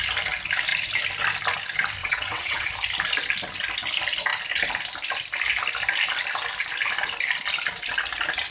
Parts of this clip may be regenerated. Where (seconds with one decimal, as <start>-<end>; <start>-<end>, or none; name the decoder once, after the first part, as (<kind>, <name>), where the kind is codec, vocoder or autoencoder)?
2.0-2.7 (vocoder, WaveNeXt)